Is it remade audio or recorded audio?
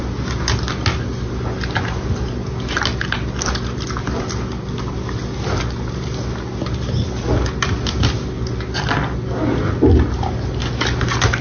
recorded